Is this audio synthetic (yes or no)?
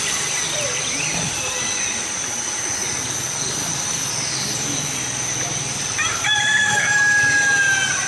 no